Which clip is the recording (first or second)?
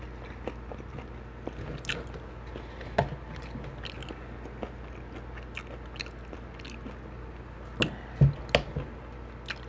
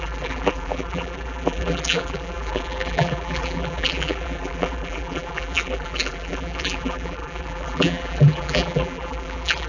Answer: first